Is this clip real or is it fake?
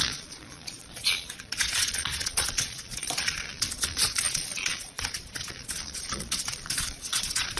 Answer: fake